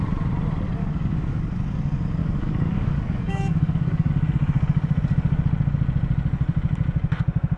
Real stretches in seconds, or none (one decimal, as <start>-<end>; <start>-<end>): 0.0-0.8; 1.4-2.2; 4.1-7.6